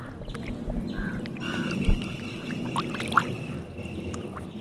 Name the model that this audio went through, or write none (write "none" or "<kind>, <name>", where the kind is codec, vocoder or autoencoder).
none